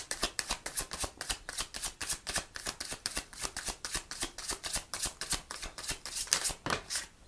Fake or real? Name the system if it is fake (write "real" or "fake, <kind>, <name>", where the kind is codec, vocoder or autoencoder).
fake, vocoder, BigVGAN v2